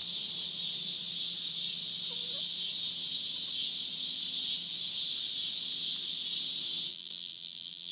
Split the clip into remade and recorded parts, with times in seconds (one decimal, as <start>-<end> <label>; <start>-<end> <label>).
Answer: 0.0-6.9 recorded; 6.9-7.9 remade